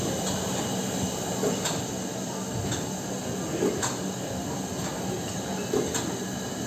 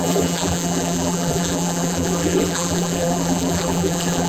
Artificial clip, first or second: second